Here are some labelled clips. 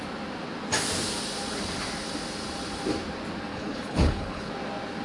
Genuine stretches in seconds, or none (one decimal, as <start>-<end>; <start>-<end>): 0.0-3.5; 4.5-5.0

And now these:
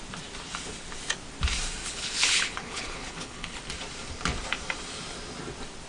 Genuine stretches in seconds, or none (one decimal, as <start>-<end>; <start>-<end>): 0.0-1.8; 3.6-5.9

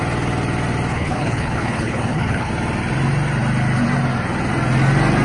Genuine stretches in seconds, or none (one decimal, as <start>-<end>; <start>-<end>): 0.0-0.9; 2.5-5.2

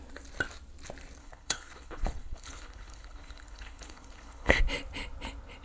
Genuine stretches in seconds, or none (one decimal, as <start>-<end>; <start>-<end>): 0.0-1.2; 4.6-5.6

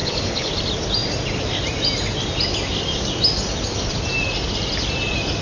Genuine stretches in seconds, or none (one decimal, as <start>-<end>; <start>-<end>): 0.5-5.4

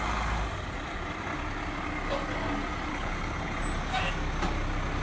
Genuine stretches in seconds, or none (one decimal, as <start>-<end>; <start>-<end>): 0.0-2.9; 3.6-5.0